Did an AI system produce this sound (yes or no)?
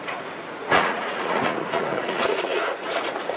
yes